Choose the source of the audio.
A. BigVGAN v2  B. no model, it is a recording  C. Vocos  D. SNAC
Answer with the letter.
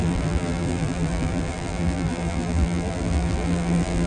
A